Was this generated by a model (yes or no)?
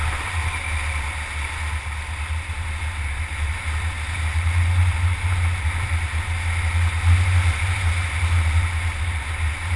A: no